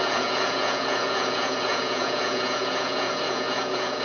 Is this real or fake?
fake